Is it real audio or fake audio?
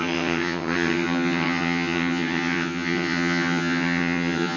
fake